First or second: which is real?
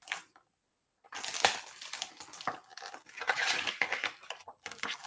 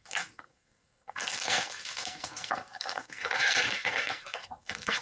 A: first